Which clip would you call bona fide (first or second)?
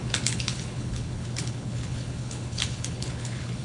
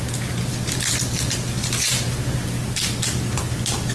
second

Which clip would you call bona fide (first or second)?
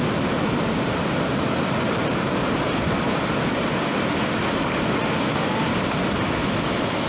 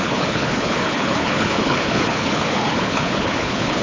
first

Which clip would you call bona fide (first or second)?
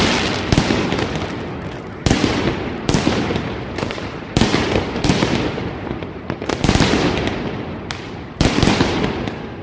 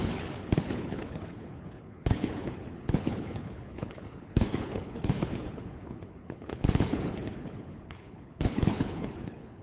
first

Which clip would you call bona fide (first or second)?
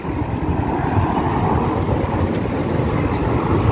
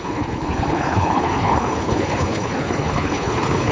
first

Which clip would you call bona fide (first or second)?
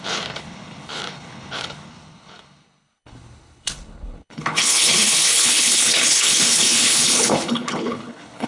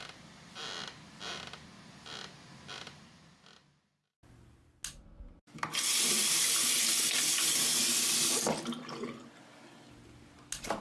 second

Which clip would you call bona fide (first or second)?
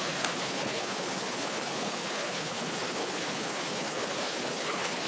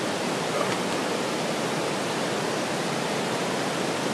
second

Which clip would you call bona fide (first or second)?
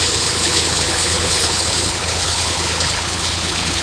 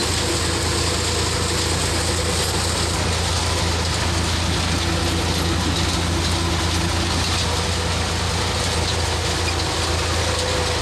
second